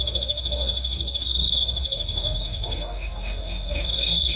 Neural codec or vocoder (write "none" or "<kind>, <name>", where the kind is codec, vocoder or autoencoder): codec, DAC